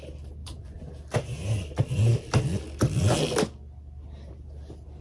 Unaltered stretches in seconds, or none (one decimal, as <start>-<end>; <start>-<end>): 0.0-0.4; 0.9-5.0